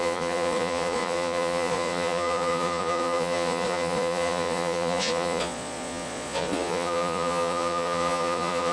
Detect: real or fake fake